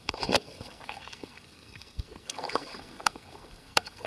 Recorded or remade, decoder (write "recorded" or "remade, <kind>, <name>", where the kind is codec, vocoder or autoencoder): remade, codec, SNAC